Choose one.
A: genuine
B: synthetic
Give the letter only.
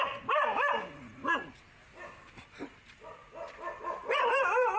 A